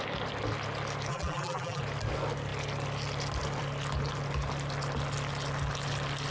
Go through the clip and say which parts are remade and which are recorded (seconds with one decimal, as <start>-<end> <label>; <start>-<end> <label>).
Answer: 0.0-1.1 recorded; 1.1-1.8 remade; 1.8-6.3 recorded